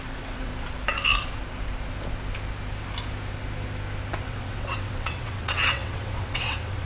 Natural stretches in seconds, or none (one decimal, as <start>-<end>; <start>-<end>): 0.5-4.2